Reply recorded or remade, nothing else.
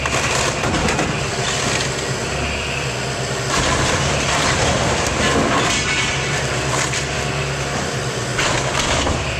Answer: remade